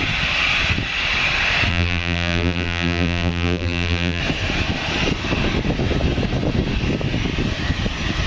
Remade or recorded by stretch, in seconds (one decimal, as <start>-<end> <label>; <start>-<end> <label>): 0.0-1.7 recorded; 1.7-4.2 remade; 4.2-8.3 recorded